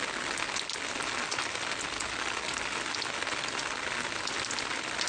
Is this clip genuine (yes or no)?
yes